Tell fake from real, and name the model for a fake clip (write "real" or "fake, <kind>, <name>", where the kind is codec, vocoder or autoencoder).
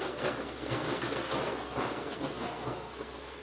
fake, codec, SNAC